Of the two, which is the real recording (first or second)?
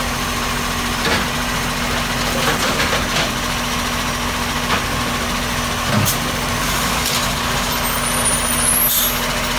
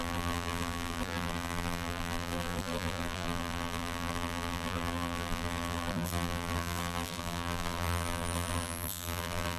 first